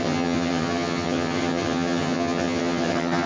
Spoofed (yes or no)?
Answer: yes